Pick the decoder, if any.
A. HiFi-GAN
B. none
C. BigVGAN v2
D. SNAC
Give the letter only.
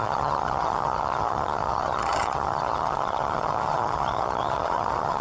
A